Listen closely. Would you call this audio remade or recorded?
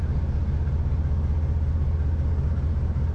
recorded